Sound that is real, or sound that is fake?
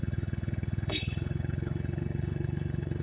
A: fake